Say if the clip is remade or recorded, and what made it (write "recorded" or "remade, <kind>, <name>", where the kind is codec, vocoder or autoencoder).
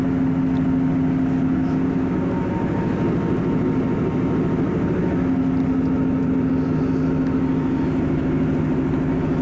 recorded